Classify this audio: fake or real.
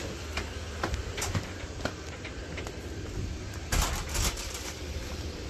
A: fake